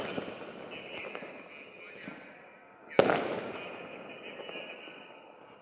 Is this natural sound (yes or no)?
yes